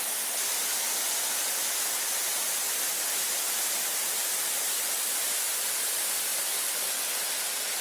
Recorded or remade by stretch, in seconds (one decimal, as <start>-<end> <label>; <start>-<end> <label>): 0.0-1.6 recorded; 1.6-5.0 remade; 5.0-7.8 recorded